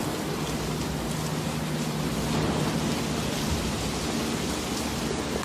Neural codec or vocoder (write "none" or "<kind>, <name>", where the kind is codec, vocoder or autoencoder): none